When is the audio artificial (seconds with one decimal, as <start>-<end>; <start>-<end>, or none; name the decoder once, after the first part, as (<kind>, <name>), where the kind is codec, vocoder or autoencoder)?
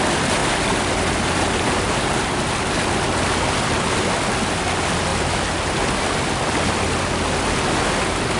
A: none